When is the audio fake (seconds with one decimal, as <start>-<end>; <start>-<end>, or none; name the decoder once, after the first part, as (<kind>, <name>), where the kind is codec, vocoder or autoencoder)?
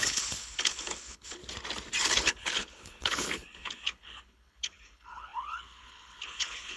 0.0-1.4 (codec, HILCodec); 2.0-6.8